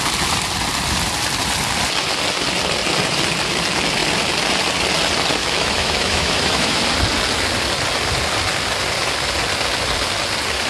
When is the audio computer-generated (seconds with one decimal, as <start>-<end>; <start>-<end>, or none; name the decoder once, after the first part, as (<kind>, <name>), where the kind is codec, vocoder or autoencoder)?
5.4-6.8 (autoencoder, DAC-VAE)